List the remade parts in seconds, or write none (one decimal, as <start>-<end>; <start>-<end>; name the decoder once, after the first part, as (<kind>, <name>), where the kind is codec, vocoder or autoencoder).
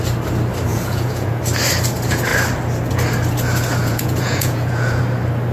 0.7-1.4 (vocoder, Vocos); 3.8-5.0